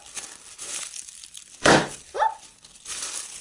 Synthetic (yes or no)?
yes